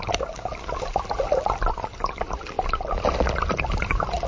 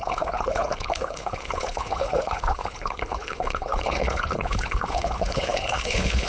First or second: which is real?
first